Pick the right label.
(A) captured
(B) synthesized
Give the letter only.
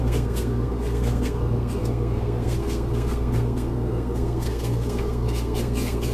B